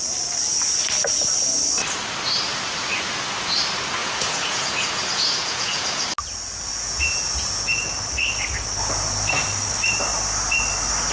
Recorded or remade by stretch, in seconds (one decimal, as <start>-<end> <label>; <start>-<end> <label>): 0.0-4.0 recorded; 4.0-6.1 remade; 6.1-6.7 recorded; 6.7-8.0 remade; 8.0-11.1 recorded